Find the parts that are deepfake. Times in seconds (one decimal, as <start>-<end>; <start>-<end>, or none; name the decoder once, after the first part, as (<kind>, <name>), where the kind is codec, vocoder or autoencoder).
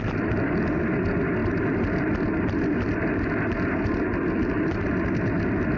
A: none